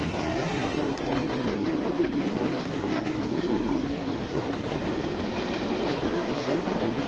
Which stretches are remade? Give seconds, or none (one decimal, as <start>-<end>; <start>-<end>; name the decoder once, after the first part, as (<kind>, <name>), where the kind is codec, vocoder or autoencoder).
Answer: 0.0-4.8 (codec, SNAC); 5.9-7.1